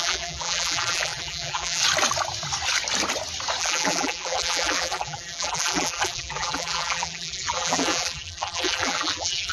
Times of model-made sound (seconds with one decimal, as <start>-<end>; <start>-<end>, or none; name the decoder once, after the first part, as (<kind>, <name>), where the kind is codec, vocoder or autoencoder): 0.0-1.8 (vocoder, BigVGAN v2); 3.6-9.5